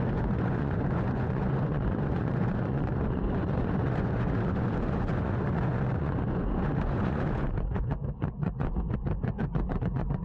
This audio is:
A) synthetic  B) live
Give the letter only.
A